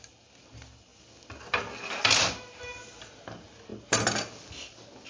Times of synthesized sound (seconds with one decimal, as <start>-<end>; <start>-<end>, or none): none